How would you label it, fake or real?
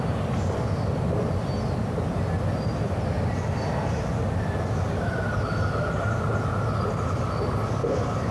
real